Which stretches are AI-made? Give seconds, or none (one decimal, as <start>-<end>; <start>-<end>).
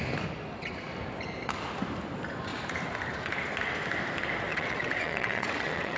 4.5-6.0